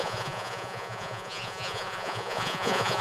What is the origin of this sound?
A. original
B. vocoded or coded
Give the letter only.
B